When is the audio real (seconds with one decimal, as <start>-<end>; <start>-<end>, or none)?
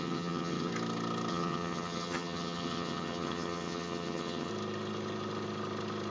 0.7-1.3; 4.5-6.1